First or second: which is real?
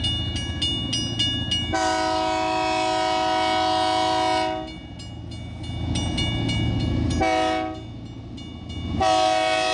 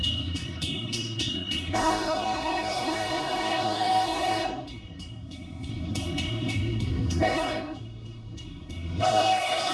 first